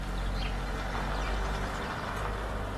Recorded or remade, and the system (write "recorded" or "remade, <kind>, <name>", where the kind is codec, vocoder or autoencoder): recorded